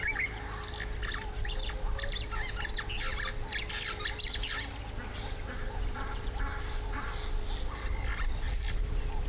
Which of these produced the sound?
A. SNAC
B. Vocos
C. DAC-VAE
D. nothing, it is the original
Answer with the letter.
D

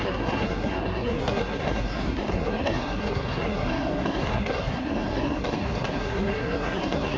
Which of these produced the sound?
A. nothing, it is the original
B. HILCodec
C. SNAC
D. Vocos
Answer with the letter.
C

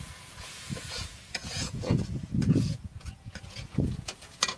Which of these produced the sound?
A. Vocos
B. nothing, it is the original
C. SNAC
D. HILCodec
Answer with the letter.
A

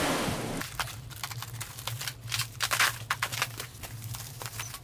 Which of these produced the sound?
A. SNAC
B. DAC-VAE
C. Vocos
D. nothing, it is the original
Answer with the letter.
D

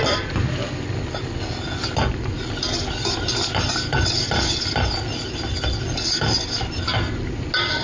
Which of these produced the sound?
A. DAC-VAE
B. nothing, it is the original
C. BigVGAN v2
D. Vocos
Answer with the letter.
B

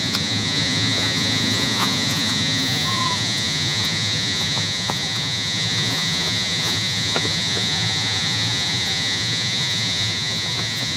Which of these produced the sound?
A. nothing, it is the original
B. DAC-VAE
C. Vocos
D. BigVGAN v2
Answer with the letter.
C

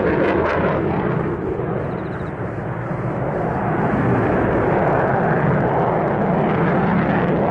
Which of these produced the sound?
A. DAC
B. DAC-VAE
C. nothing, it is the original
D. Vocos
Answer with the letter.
C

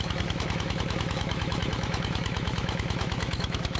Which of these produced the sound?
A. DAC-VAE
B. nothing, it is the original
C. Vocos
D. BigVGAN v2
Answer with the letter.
A